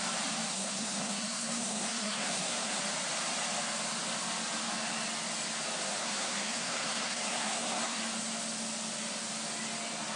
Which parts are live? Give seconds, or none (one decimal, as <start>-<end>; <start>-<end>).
0.0-0.5; 2.8-6.0; 8.0-10.2